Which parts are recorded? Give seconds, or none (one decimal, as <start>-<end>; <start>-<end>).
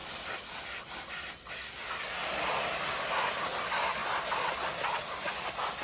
1.7-5.8